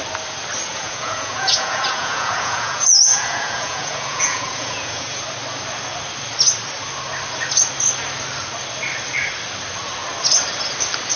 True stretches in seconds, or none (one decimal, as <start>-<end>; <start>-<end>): 0.0-0.7; 5.2-11.2